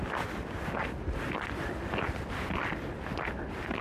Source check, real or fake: real